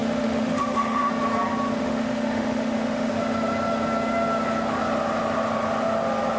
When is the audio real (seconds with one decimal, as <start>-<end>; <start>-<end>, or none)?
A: 1.1-1.8; 3.1-6.4